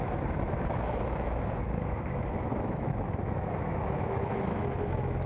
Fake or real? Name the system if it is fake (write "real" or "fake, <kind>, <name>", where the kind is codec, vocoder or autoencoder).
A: fake, autoencoder, DAC-VAE